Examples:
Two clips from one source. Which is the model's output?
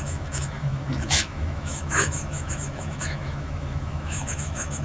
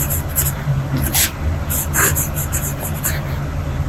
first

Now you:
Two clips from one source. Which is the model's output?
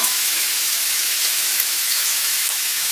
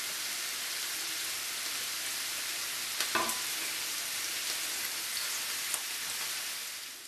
first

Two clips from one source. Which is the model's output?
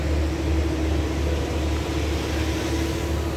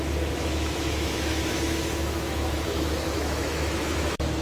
second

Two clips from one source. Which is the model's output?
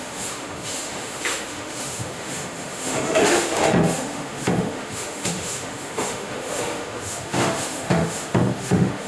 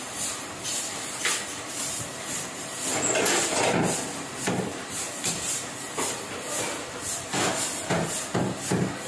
first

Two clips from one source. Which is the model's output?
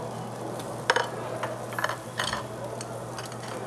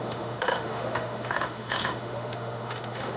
second